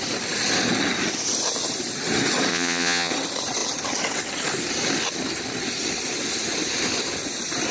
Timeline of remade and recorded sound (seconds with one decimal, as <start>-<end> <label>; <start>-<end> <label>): 0.0-2.5 recorded; 2.5-3.1 remade; 3.1-7.7 recorded